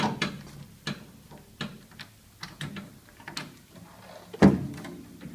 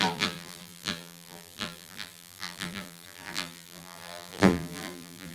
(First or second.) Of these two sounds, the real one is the first